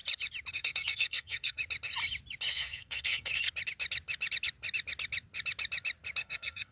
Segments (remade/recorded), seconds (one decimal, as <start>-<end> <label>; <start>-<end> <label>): 0.0-0.5 recorded; 0.5-1.6 remade; 1.6-2.5 recorded; 2.5-3.3 remade; 3.3-6.2 recorded; 6.2-6.7 remade